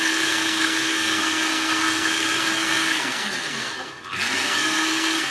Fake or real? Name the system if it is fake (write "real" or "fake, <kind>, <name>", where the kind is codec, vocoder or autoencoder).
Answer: fake, codec, SNAC